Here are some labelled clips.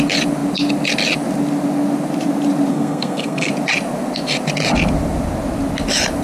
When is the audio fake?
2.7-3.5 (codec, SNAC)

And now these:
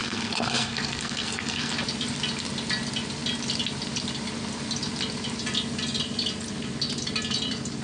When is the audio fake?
0.0-1.7 (codec, SNAC)

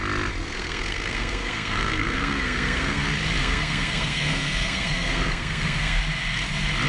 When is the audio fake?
0.4-3.0 (codec, SNAC); 3.4-6.0